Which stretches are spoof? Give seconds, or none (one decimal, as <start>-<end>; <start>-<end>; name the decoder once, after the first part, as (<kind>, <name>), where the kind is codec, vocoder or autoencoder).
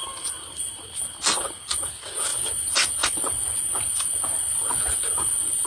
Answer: none